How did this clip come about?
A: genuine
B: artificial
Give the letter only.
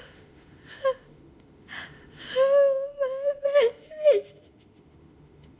B